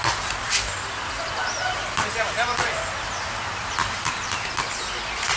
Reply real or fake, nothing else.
real